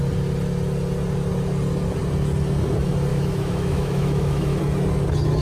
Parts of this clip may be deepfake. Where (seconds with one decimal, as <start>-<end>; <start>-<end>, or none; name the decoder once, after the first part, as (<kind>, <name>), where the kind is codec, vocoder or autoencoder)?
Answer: 3.1-4.6 (autoencoder, DAC-VAE)